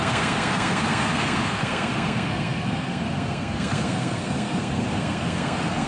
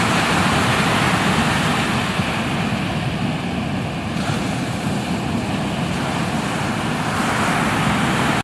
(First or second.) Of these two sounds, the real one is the second